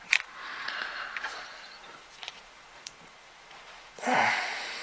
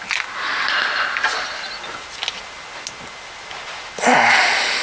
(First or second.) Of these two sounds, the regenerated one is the first